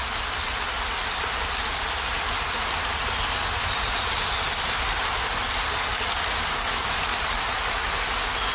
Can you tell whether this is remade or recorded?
recorded